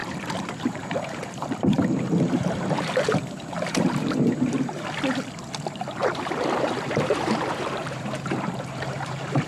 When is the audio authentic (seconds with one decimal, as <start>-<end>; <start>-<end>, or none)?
4.9-6.0